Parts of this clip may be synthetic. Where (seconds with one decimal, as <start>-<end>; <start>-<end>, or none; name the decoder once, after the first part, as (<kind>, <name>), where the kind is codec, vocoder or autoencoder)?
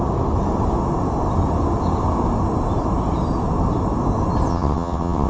4.5-5.3 (vocoder, WaveNeXt)